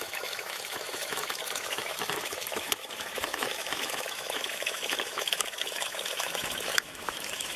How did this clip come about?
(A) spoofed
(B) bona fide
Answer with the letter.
A